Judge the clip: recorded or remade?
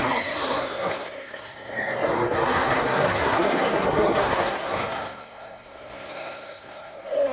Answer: remade